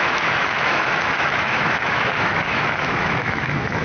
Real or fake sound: fake